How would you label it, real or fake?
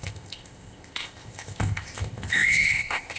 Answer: fake